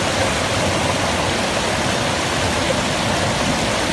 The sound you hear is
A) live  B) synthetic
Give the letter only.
A